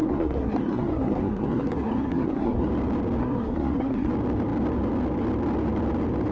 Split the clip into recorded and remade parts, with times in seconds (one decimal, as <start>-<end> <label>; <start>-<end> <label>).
0.0-2.7 remade; 2.7-3.2 recorded; 3.2-4.1 remade; 4.1-6.3 recorded